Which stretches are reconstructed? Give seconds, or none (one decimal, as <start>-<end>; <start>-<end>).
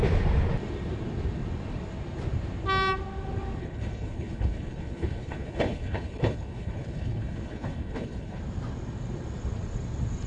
3.6-8.4